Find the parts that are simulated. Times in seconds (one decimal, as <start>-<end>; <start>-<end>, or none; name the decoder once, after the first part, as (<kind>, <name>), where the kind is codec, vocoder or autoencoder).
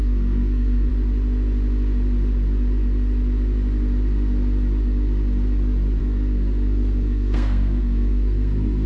0.0-0.9 (codec, SNAC); 6.0-8.9